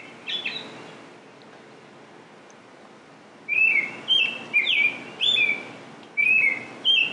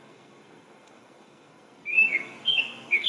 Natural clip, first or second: first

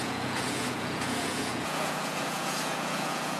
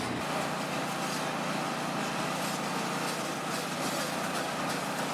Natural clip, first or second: second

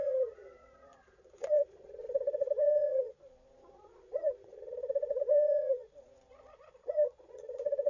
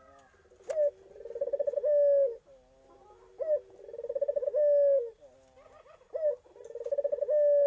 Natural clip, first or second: second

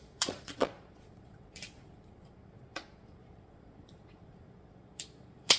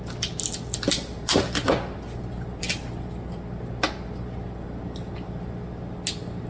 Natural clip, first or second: second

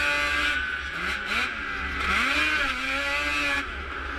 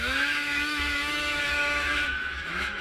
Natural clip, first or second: first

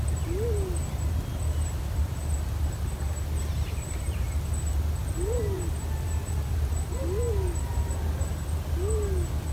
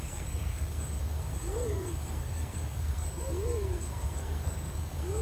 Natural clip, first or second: first